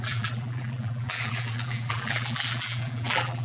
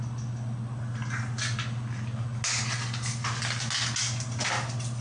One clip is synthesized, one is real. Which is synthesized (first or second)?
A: first